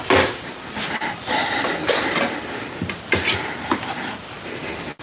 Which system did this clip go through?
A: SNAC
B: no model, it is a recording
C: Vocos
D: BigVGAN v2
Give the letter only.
B